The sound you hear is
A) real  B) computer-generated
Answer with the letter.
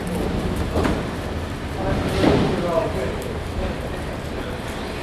A